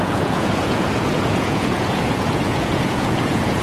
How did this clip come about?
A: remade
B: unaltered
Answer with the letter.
A